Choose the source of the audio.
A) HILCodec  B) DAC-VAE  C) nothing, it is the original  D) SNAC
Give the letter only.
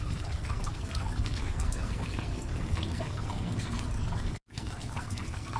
D